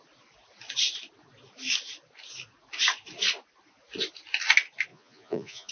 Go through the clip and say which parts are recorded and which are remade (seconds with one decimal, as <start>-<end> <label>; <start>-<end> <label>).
0.0-4.9 recorded; 4.9-5.7 remade